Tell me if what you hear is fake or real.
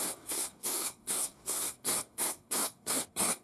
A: fake